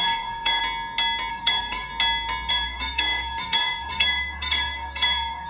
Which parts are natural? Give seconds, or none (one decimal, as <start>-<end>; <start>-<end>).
0.6-1.3; 1.9-2.5